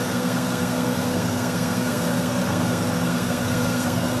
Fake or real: fake